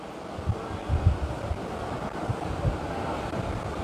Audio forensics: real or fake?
real